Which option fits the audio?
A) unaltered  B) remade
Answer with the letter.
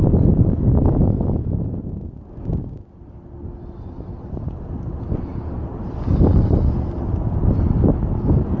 A